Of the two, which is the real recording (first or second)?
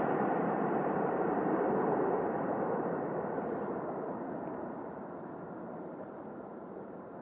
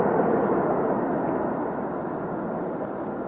second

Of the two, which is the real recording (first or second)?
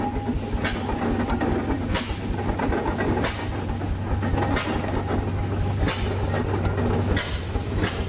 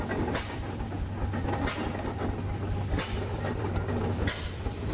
first